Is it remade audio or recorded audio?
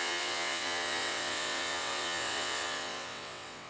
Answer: remade